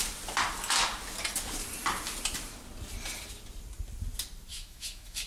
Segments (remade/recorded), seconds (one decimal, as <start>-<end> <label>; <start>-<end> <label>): 0.0-4.5 recorded; 4.5-5.3 remade